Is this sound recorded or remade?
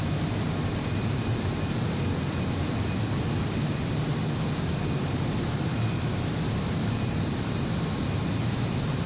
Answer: remade